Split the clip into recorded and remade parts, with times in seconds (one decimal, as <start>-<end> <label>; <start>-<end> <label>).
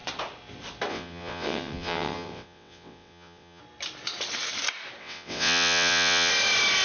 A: 0.0-0.9 recorded; 0.9-3.6 remade; 3.6-5.0 recorded; 5.0-6.3 remade; 6.3-6.8 recorded